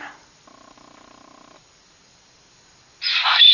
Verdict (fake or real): real